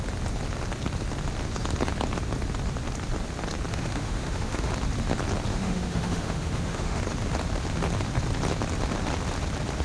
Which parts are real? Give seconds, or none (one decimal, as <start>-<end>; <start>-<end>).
0.0-3.7; 4.7-5.5; 7.0-9.8